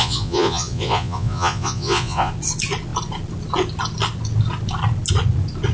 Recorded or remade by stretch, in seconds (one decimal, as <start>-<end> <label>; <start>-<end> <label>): 0.0-2.3 remade; 2.3-5.7 recorded